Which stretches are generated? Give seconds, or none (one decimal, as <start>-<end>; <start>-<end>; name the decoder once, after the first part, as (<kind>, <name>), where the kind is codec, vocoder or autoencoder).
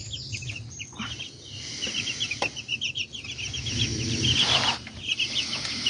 none